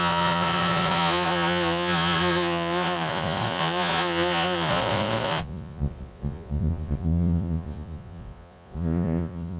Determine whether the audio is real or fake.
fake